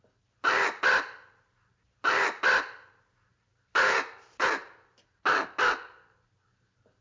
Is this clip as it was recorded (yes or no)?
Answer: yes